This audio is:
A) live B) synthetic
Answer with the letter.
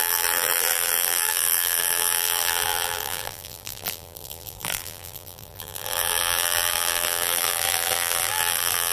B